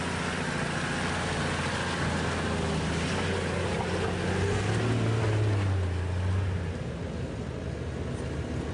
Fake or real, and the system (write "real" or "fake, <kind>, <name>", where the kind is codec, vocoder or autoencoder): real